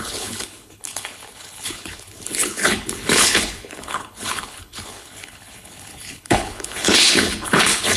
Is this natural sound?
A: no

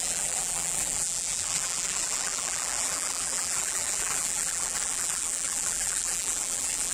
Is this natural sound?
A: no